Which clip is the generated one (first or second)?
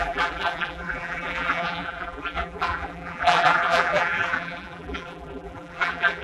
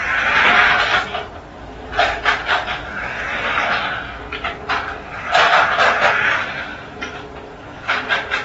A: first